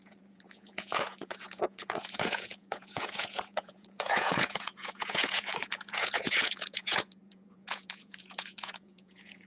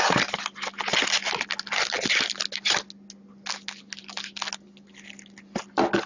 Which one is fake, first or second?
first